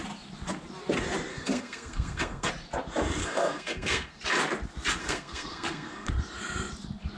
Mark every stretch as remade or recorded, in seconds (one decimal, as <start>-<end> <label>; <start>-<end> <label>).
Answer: 0.0-1.3 recorded; 1.3-2.5 remade; 2.5-3.2 recorded; 3.2-4.2 remade; 4.2-5.0 recorded; 5.0-6.1 remade; 6.1-7.2 recorded